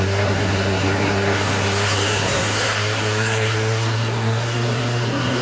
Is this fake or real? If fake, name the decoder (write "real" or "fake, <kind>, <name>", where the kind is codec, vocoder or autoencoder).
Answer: fake, codec, SNAC